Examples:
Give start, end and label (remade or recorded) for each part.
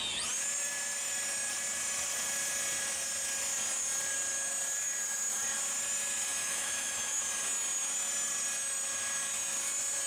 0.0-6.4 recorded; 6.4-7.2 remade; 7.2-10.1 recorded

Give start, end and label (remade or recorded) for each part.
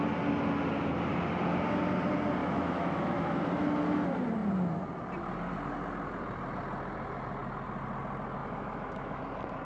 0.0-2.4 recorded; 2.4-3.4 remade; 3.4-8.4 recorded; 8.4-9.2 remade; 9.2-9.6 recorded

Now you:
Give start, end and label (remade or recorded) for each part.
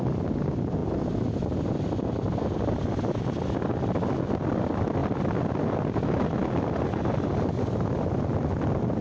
0.0-9.0 recorded